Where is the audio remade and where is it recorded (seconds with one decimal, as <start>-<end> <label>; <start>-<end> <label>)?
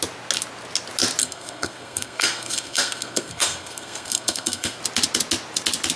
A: 0.0-1.2 recorded; 1.2-4.8 remade; 4.8-6.0 recorded